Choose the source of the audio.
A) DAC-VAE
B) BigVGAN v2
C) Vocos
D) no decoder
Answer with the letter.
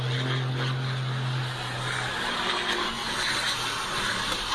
D